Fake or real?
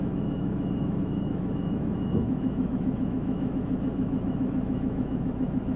fake